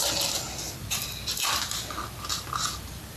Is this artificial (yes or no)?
no